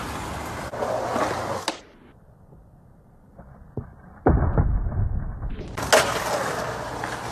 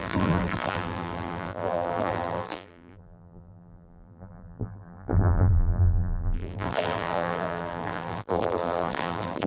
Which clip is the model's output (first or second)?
second